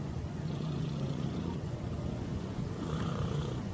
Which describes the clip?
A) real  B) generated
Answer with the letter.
B